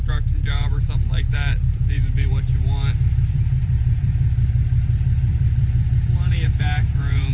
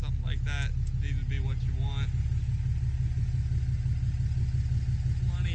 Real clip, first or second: second